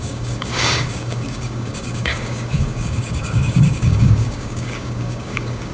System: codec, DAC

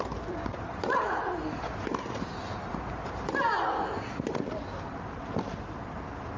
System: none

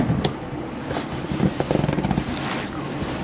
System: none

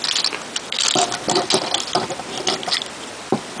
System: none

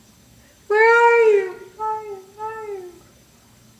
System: codec, DAC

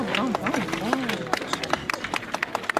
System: none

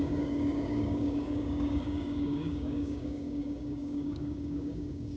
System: codec, DAC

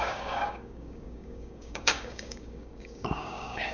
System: codec, DAC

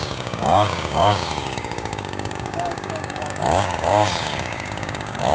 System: codec, DAC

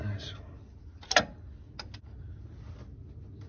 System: none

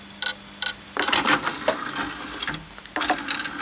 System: none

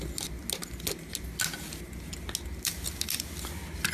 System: none